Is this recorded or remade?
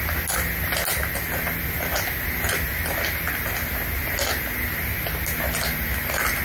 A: recorded